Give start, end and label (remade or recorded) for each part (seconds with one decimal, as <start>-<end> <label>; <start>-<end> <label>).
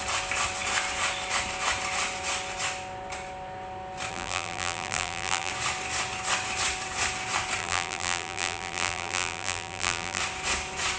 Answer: 0.0-4.1 recorded; 4.1-5.5 remade; 5.5-7.6 recorded; 7.6-10.2 remade; 10.2-11.0 recorded